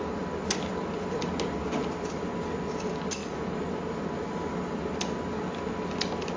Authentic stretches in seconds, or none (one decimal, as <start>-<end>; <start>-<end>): 0.0-6.4